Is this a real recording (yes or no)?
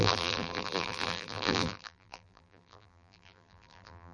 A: no